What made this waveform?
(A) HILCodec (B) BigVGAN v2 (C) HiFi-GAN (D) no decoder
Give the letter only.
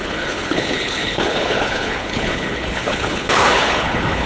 A